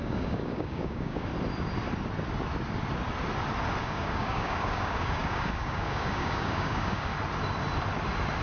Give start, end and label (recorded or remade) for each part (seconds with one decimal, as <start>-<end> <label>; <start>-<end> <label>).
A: 0.0-1.3 remade; 1.3-3.8 recorded; 3.8-7.1 remade; 7.1-8.4 recorded